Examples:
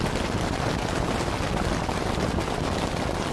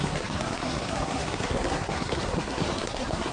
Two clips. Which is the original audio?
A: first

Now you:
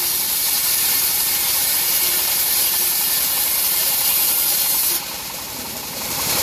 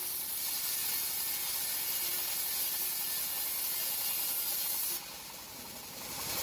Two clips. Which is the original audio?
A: second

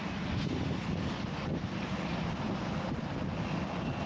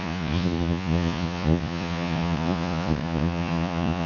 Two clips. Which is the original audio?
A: first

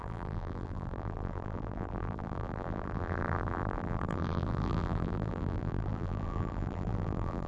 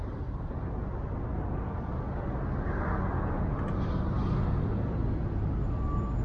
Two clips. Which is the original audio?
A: second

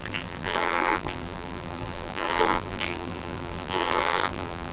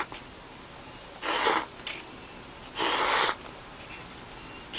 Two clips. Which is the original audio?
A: second